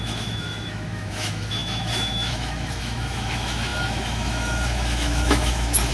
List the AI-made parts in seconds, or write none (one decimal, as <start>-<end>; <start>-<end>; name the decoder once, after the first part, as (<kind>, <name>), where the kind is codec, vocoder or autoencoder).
0.0-5.9 (autoencoder, DAC-VAE)